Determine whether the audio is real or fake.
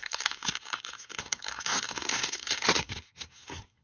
fake